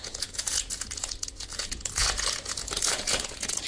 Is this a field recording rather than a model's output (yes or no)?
no